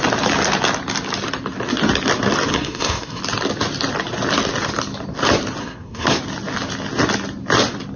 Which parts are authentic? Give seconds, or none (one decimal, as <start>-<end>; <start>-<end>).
0.0-2.5; 3.2-5.6; 6.2-8.0